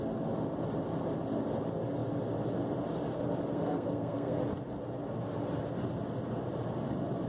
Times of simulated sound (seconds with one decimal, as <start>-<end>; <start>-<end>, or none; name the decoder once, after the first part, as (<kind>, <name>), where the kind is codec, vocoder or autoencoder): 3.5-4.4 (codec, SNAC)

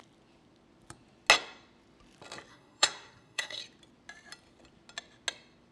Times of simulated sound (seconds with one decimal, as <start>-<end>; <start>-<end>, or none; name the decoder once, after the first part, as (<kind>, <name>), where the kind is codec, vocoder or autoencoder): 2.5-3.6 (codec, SNAC)

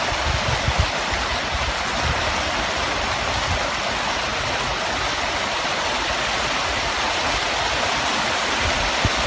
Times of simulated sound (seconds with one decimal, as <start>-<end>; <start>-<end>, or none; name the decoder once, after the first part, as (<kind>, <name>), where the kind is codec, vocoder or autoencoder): none

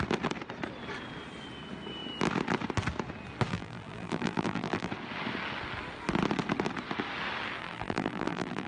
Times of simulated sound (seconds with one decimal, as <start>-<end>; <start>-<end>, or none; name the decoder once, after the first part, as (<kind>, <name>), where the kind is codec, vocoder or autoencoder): 3.5-4.9 (vocoder, BigVGAN v2); 7.6-8.7

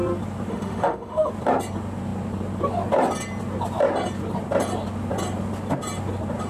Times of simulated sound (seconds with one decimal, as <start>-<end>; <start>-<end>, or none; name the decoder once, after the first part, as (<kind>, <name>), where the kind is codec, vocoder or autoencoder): 0.5-1.3 (autoencoder, DAC-VAE)

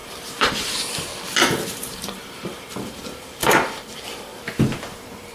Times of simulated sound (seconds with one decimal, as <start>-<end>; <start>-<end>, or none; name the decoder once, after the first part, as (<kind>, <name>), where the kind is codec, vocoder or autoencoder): 0.0-1.1 (vocoder, BigVGAN v2); 1.7-4.3; 4.8-5.3

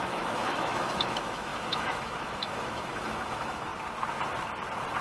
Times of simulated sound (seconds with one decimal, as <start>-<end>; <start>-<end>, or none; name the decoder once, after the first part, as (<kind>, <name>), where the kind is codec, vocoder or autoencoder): 0.0-3.7 (autoencoder, DAC-VAE)